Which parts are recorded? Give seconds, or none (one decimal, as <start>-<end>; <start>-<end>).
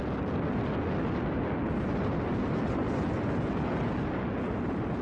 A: 0.0-5.0